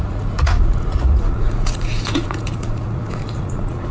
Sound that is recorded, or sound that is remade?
remade